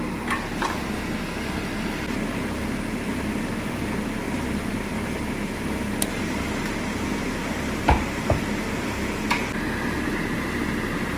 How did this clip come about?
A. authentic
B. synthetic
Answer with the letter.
A